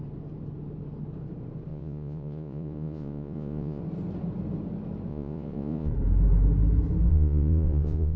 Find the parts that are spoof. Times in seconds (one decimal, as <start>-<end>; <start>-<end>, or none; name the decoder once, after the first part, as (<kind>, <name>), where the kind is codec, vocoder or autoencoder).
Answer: 1.7-3.8 (vocoder, Vocos); 5.1-5.9; 7.1-8.2